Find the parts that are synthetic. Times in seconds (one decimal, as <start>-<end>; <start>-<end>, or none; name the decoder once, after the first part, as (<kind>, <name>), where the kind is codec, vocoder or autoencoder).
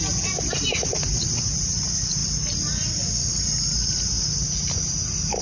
1.1-1.8 (vocoder, BigVGAN v2)